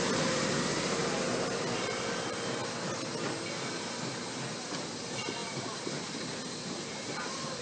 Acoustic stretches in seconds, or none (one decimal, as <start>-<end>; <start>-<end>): 1.0-1.6; 2.6-4.7